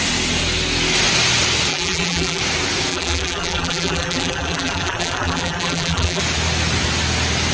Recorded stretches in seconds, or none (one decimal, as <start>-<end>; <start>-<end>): 0.0-1.7; 2.4-2.9; 6.2-7.5